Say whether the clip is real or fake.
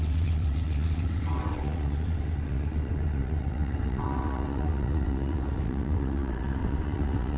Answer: fake